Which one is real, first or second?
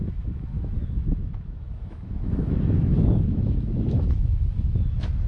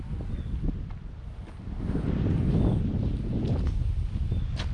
second